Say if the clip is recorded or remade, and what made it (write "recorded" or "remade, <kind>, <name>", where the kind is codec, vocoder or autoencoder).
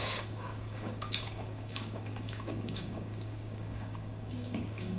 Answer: remade, codec, DAC